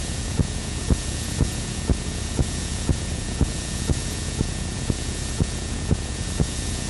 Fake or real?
fake